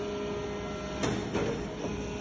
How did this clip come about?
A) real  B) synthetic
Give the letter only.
A